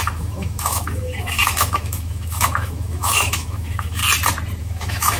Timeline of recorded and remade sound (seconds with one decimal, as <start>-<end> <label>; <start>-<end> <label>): 0.0-4.0 remade; 4.0-4.6 recorded; 4.6-5.2 remade